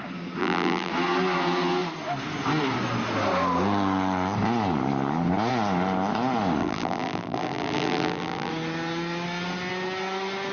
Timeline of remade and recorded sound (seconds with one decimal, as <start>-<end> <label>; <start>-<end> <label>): 0.0-0.4 recorded; 0.4-0.9 remade; 0.9-6.6 recorded; 6.6-8.5 remade; 8.5-10.5 recorded